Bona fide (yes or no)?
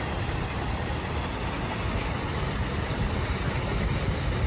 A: yes